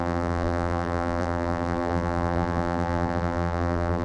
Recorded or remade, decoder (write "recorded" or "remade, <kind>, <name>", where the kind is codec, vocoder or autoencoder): remade, vocoder, BigVGAN v2